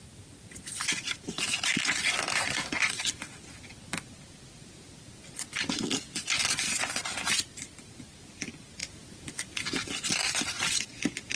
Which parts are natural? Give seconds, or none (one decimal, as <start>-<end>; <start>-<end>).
0.0-11.4